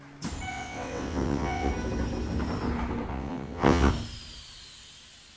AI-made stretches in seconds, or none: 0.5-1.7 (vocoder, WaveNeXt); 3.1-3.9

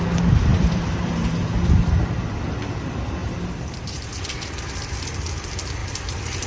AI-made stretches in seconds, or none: 0.5-1.9 (vocoder, BigVGAN v2); 3.2-4.5